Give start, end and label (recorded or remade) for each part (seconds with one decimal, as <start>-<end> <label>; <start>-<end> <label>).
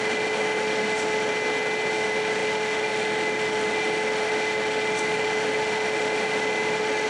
0.0-1.3 remade; 1.3-1.9 recorded; 1.9-7.1 remade